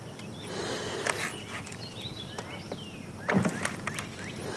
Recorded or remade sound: recorded